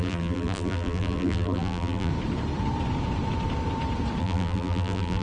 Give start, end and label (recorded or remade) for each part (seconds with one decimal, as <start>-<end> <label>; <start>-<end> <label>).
0.0-2.1 remade; 2.1-4.2 recorded; 4.2-5.2 remade